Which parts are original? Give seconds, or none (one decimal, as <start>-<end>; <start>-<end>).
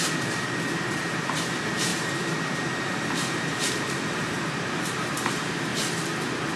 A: 5.7-6.6